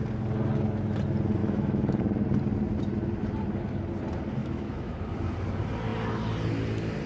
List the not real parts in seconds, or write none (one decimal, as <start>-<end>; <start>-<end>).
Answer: 1.4-2.0; 4.4-5.0